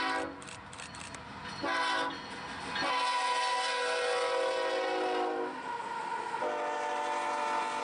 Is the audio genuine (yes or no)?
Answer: yes